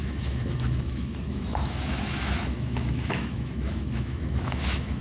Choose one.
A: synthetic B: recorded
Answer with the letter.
A